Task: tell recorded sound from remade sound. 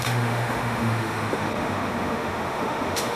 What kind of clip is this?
remade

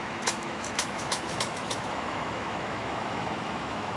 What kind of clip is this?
remade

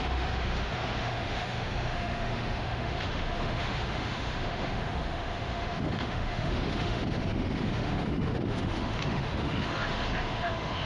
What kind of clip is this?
remade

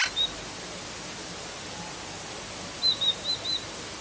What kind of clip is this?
recorded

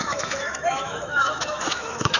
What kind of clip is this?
remade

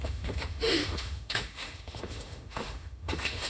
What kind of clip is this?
remade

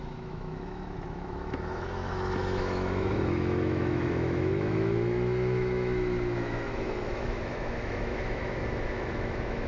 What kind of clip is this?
remade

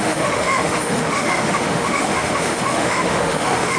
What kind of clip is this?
remade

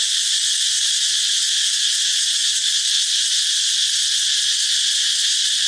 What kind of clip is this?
recorded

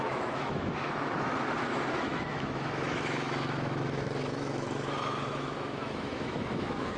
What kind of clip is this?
remade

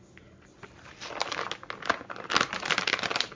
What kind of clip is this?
recorded